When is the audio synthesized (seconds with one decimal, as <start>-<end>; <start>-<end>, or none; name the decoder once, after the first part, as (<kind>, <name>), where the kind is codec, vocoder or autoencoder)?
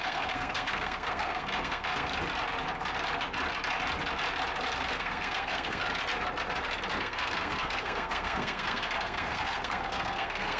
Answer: 0.0-2.1 (codec, SNAC); 4.9-5.8; 7.0-10.6